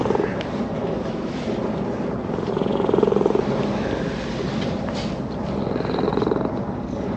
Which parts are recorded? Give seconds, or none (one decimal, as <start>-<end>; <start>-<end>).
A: 0.0-0.8; 1.4-7.2